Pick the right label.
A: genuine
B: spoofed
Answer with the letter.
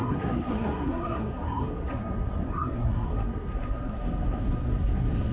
B